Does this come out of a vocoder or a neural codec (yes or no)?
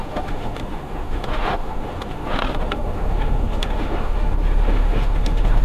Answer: yes